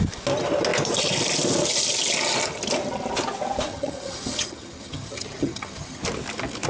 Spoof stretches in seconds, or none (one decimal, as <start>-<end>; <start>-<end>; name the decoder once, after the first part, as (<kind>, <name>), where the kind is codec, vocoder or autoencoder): 3.7-6.0 (vocoder, HiFi-GAN)